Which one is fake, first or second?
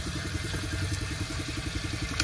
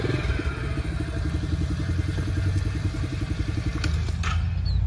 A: first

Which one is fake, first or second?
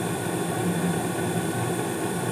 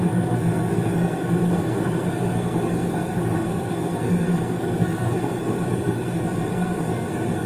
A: second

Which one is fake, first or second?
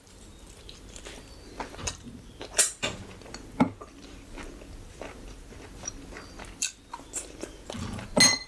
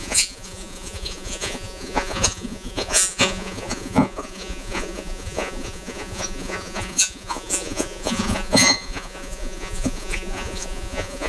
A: second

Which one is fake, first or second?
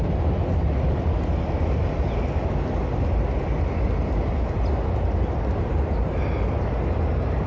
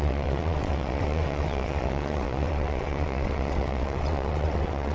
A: second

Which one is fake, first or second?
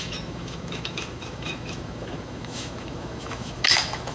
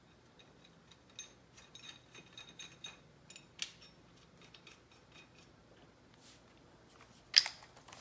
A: first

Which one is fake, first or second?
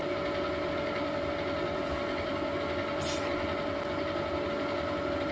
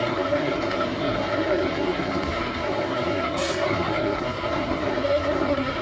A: second